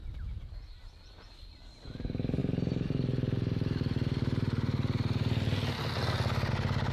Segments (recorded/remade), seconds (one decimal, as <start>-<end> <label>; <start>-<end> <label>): 0.0-6.9 recorded